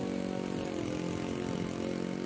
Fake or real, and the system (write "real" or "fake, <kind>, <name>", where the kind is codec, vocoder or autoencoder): real